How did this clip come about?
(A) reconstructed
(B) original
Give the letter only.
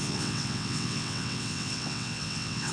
A